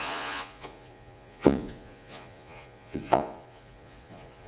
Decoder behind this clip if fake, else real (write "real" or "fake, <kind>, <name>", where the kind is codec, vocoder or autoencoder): fake, vocoder, Vocos